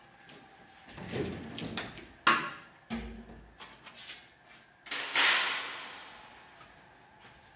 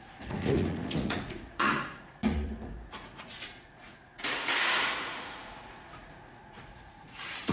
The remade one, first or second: second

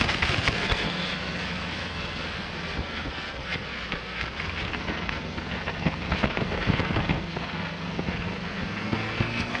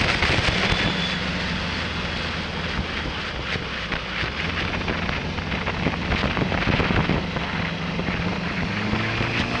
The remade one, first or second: first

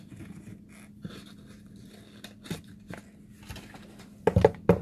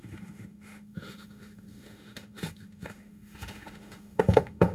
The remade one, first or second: second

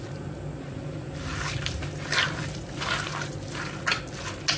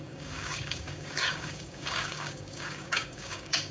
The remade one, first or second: second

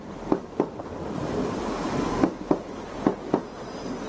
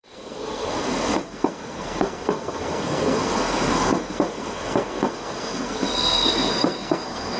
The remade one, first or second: second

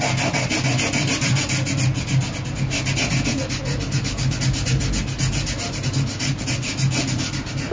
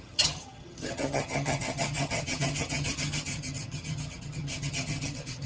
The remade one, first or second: second